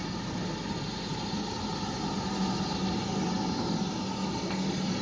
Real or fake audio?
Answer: real